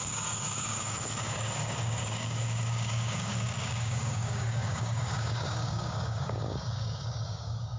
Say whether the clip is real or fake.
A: fake